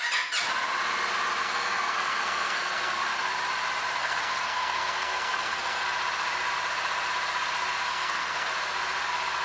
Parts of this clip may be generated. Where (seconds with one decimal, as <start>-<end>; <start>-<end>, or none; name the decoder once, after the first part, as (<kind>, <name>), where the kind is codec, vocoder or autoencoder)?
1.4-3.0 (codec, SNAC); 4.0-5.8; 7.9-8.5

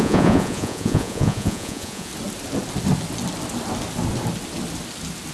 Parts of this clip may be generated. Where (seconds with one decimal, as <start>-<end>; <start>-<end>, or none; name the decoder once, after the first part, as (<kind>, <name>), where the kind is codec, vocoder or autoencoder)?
0.0-2.1 (vocoder, Vocos)

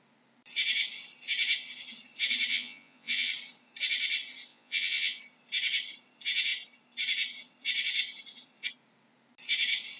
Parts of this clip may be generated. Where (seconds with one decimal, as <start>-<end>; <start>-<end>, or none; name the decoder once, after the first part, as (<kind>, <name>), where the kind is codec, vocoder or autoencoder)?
2.5-3.3 (vocoder, Vocos); 4.5-5.2

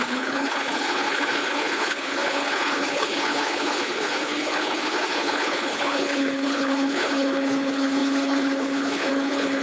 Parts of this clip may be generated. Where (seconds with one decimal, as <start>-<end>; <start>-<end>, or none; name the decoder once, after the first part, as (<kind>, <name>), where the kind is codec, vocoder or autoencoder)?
0.0-9.6 (codec, HILCodec)